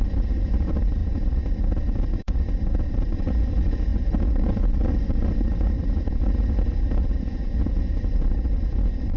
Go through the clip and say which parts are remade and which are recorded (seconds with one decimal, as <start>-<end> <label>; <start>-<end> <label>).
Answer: 0.0-9.2 remade